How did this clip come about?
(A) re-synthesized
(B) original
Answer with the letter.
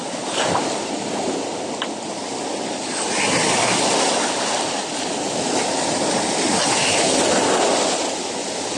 B